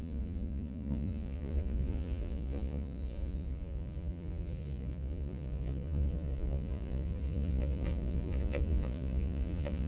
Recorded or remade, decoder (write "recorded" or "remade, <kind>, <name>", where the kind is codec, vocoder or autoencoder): remade, vocoder, Vocos